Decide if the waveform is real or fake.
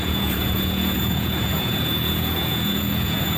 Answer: fake